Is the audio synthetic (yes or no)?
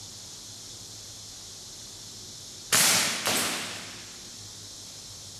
no